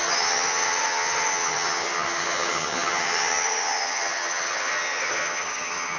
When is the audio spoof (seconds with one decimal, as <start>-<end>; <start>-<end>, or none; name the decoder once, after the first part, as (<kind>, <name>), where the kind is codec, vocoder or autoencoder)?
0.0-6.0 (vocoder, HiFi-GAN)